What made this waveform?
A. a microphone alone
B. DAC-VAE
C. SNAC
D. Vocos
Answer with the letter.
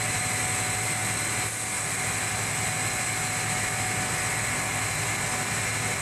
A